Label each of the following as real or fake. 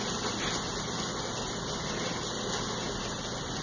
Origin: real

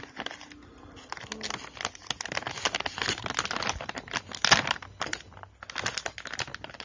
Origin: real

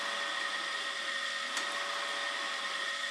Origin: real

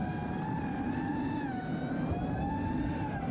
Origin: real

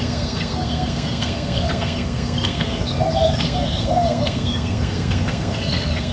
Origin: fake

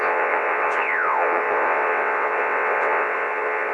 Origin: fake